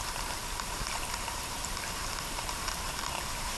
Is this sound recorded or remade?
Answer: remade